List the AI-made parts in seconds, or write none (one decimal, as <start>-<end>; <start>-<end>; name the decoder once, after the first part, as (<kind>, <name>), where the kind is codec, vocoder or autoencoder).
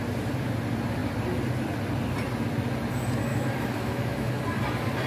3.3-4.3 (autoencoder, DAC-VAE)